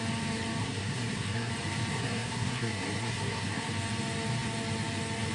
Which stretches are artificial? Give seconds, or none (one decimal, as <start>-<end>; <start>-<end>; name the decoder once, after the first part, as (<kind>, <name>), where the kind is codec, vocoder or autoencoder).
0.6-1.5 (codec, SNAC); 1.9-3.7